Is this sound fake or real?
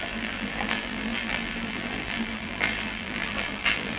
fake